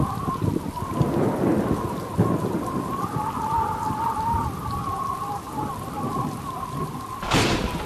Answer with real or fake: real